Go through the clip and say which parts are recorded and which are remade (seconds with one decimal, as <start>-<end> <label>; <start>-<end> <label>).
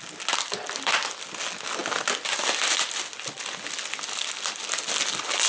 0.0-5.5 recorded